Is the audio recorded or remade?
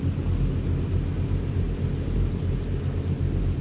recorded